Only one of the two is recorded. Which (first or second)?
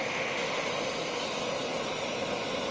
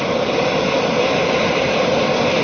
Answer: first